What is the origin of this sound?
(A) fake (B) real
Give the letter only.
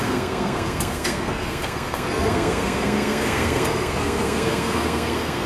A